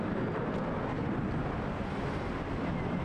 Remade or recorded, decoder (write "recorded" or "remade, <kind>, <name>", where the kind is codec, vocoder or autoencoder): recorded